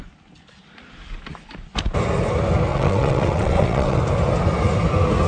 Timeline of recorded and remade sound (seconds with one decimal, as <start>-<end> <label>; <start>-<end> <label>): 0.0-2.7 recorded; 2.7-4.0 remade; 4.0-5.3 recorded